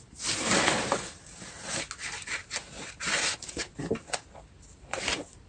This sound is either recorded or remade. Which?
recorded